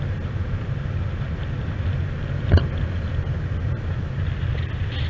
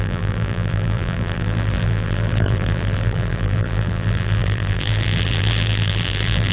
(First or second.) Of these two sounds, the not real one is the second